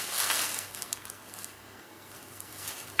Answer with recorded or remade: remade